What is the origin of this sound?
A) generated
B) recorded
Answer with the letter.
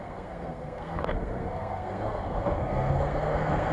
A